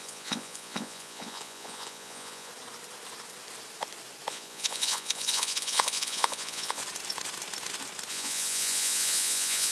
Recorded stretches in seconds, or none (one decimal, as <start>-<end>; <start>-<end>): 2.5-4.3; 6.8-8.1